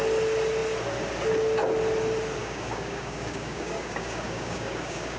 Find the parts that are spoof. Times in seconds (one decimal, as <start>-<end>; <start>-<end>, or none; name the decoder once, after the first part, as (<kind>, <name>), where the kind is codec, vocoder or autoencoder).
2.4-5.2 (codec, DAC)